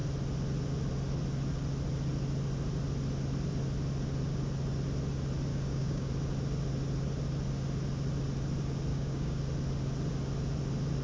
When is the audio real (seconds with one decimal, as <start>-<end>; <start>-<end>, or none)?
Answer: 0.0-5.5; 6.1-8.9; 9.4-11.0